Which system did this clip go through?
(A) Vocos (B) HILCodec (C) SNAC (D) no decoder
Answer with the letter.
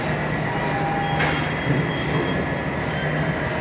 D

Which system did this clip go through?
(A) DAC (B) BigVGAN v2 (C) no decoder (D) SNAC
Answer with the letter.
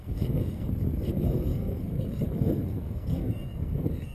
D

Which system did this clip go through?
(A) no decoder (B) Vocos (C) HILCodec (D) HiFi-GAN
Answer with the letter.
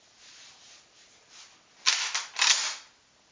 A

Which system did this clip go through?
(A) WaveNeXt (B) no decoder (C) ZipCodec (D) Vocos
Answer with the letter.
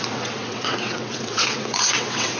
A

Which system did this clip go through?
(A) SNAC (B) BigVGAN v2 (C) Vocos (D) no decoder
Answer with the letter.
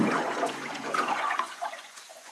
C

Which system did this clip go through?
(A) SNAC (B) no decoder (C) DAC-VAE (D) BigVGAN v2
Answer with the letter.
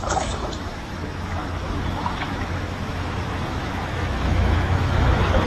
C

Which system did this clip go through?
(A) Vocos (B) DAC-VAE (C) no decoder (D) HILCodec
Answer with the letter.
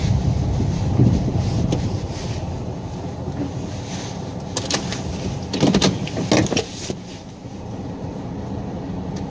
C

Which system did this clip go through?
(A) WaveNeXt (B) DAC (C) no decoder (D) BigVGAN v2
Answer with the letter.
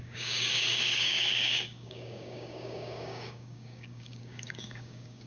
B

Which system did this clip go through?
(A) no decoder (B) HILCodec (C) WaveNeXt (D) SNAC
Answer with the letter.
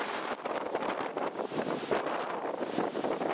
A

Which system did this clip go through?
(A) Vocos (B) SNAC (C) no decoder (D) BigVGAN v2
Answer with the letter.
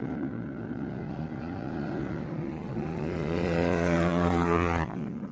A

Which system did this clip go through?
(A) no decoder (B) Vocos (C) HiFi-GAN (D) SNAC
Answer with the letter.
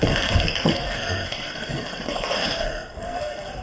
D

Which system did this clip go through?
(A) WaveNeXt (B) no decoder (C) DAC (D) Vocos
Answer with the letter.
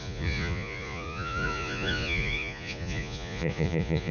D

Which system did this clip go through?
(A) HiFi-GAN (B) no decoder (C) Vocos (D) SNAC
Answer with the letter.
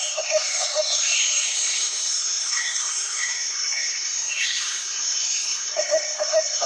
D